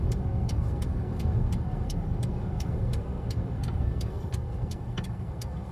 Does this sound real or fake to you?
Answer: fake